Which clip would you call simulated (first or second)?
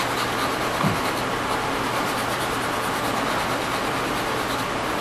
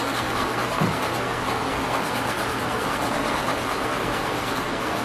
second